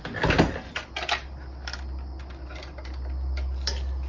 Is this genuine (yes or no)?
yes